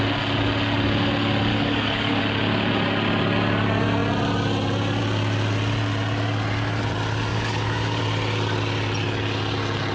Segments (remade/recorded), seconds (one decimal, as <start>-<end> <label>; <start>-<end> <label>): 0.0-1.5 recorded; 1.5-2.2 remade; 2.2-7.3 recorded; 7.3-8.0 remade; 8.0-9.9 recorded